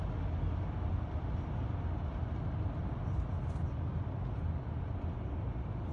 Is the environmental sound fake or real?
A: real